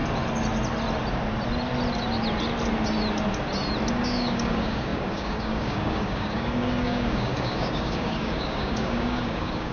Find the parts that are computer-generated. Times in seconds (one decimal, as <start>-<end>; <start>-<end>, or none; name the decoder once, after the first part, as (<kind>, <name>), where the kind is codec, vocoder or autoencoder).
3.9-9.7 (codec, DAC)